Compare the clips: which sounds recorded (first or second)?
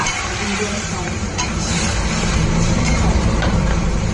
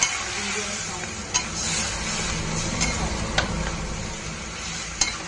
second